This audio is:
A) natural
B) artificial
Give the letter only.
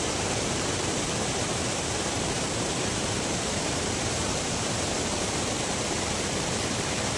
B